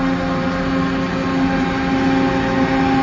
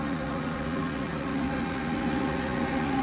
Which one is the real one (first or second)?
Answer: first